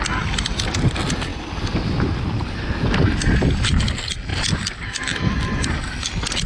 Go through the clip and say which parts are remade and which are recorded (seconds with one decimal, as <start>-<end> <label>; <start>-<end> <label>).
0.0-1.3 recorded; 1.3-2.5 remade; 2.5-4.3 recorded; 4.3-6.5 remade